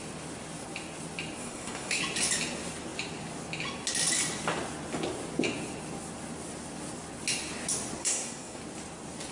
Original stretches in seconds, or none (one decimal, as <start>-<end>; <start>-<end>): 0.0-1.4; 2.0-8.0; 8.6-9.3